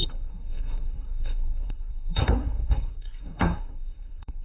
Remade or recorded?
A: remade